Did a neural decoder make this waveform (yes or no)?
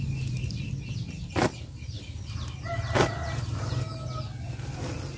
no